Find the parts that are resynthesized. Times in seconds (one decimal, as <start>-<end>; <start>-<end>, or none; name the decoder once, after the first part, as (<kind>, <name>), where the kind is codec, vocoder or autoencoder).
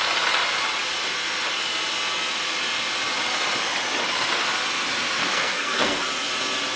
5.2-6.0 (codec, SNAC)